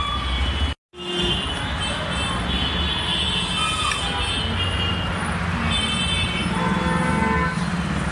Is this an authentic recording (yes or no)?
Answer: yes